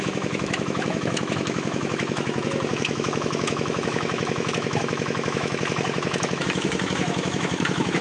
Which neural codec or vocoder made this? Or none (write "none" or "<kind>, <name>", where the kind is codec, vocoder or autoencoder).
autoencoder, DAC-VAE